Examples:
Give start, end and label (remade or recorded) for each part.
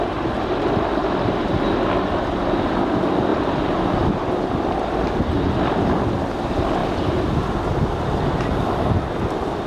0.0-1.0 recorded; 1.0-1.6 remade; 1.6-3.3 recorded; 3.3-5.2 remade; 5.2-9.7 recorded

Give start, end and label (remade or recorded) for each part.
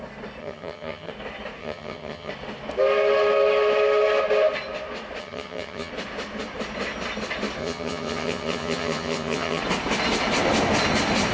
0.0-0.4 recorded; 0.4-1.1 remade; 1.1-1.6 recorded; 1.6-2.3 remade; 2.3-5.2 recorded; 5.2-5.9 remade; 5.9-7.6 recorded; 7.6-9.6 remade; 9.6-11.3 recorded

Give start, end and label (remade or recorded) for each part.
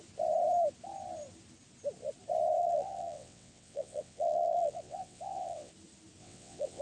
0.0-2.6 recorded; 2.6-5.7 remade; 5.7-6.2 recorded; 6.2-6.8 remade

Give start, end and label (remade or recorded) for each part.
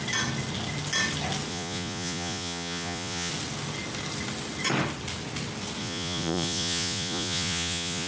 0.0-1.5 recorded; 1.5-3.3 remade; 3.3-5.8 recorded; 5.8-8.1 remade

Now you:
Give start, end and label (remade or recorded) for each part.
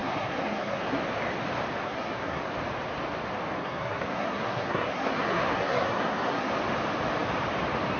0.0-1.0 remade; 1.0-1.8 recorded; 1.8-2.4 remade; 2.4-3.6 recorded; 3.6-6.5 remade; 6.5-8.0 recorded